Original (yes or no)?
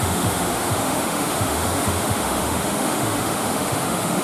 no